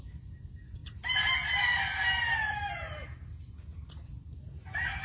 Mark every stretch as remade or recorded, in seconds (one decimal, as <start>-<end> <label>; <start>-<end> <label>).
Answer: 0.0-5.0 recorded